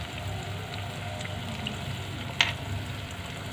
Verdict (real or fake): real